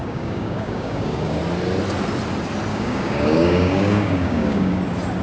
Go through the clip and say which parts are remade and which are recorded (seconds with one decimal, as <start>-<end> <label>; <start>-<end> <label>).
0.0-1.4 remade; 1.4-2.7 recorded; 2.7-4.8 remade; 4.8-5.2 recorded